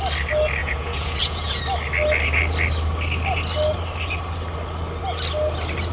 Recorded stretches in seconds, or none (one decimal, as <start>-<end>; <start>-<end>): 0.0-0.6; 1.6-5.9

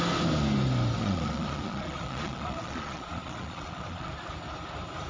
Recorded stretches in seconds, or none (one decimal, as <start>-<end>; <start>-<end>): 0.0-1.0; 4.1-5.1

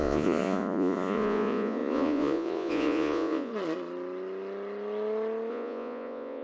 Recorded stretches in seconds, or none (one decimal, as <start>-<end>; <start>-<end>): 3.5-5.5